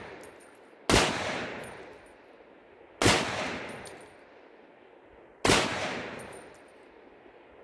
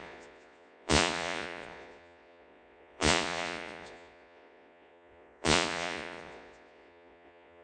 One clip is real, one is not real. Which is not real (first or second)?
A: second